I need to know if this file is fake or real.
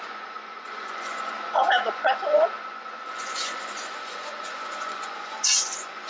fake